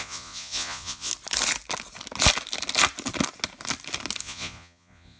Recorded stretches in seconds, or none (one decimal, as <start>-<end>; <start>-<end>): 1.1-4.2